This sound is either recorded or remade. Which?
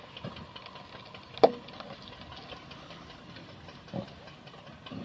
recorded